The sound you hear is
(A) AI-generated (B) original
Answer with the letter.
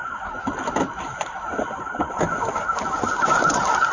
B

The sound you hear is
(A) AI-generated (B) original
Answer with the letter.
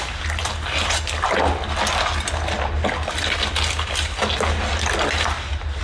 B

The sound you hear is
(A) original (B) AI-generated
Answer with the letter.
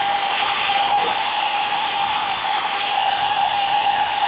B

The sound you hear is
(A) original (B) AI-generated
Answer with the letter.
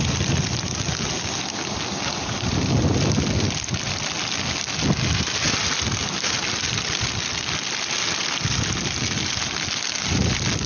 A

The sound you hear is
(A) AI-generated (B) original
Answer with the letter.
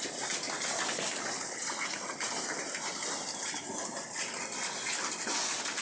B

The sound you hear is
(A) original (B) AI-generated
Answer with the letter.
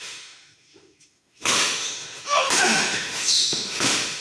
B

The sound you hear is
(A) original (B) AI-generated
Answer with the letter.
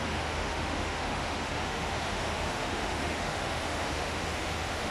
B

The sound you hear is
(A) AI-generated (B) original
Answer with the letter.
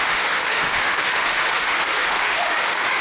A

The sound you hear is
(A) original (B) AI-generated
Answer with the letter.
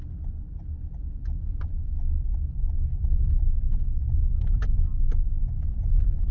A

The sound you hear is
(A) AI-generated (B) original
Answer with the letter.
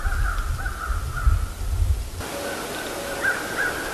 B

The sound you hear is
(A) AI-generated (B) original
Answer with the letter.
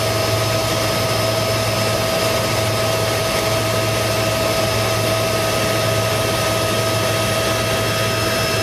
B